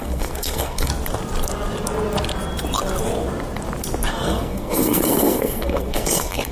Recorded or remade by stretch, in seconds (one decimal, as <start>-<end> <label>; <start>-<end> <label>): 0.0-0.9 remade; 0.9-4.1 recorded; 4.1-6.5 remade

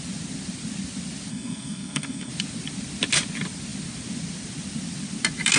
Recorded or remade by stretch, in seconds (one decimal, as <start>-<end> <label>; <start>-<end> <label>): 0.0-1.3 recorded; 1.3-2.3 remade; 2.3-5.6 recorded